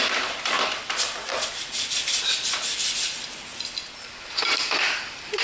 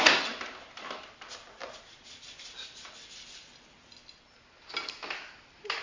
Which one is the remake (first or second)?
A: first